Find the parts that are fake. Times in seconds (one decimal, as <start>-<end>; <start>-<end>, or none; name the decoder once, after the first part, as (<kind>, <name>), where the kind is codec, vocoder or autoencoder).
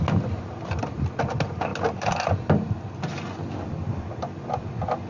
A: none